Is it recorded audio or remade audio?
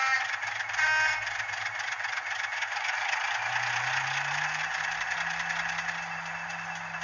recorded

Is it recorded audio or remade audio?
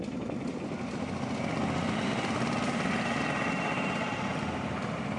recorded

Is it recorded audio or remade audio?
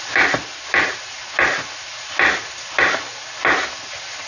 recorded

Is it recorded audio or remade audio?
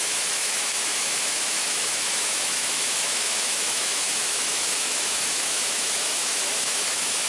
remade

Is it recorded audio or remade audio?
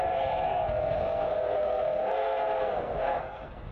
remade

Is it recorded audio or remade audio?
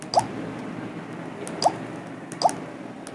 recorded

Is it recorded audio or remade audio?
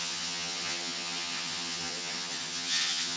remade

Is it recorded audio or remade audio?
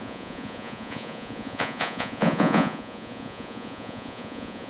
remade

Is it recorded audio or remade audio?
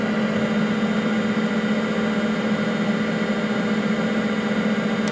recorded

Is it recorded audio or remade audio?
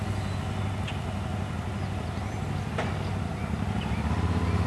recorded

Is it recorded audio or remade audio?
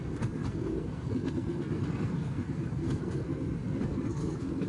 remade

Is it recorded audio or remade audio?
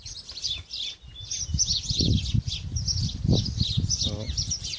recorded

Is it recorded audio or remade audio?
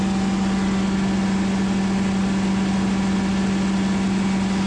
recorded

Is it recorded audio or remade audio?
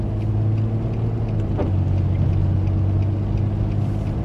recorded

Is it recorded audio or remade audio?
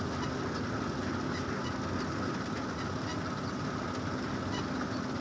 recorded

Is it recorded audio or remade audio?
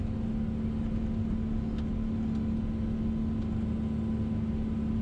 recorded